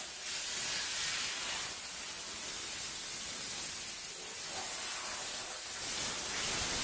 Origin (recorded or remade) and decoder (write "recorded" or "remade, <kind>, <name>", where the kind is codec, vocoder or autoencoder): recorded